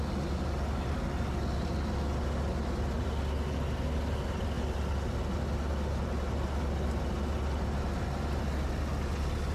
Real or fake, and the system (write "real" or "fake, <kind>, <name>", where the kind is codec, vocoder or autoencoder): real